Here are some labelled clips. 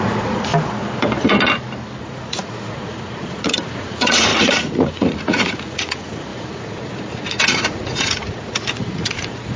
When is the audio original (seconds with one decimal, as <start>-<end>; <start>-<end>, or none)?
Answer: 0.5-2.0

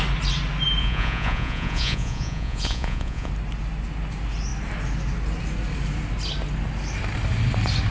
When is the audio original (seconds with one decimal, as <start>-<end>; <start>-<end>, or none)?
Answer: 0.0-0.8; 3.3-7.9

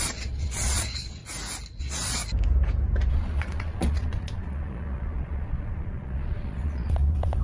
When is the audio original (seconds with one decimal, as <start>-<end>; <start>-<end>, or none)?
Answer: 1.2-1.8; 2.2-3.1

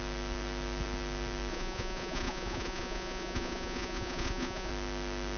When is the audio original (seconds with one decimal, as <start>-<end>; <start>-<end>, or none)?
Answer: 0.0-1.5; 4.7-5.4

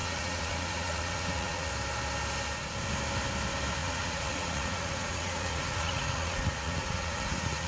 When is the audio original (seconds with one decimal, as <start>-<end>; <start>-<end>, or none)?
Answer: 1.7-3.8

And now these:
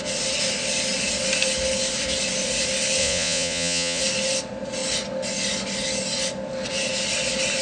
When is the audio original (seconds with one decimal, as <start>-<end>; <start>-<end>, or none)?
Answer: 0.0-3.0; 4.0-7.6

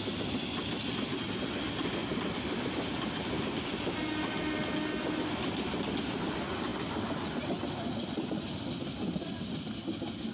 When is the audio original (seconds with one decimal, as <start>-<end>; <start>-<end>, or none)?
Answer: 0.0-10.3